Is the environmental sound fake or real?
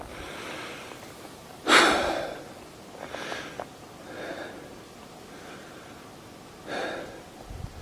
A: real